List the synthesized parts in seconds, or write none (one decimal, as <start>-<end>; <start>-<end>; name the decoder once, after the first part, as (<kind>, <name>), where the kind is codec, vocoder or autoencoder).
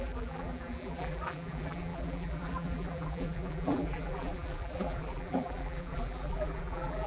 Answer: 0.0-7.1 (vocoder, BigVGAN v2)